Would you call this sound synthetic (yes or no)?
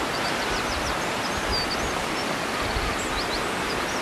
no